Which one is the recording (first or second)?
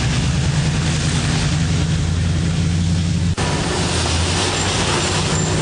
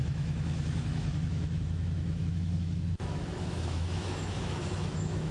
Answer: first